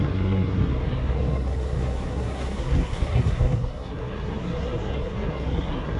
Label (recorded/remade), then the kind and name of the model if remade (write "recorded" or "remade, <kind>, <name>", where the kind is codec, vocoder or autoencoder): remade, codec, SNAC